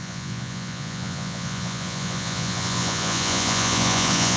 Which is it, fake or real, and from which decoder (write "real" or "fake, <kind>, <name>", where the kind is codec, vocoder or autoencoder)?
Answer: fake, vocoder, Vocos